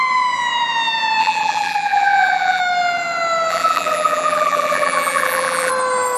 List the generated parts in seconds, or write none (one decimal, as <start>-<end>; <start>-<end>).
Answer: 1.2-2.6; 3.5-5.7

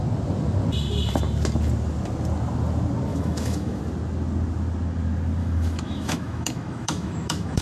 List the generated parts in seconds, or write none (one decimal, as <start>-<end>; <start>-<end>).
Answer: 3.1-3.8; 5.4-7.6